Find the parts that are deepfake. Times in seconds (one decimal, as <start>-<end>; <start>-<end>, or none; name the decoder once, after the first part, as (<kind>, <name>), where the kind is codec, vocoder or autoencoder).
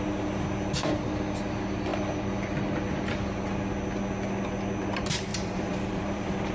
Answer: 5.3-6.5 (vocoder, BigVGAN v2)